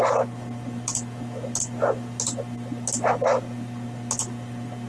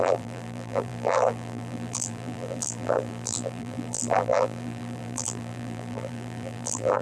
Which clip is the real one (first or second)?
first